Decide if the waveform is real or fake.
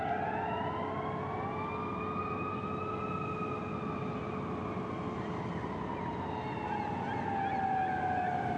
real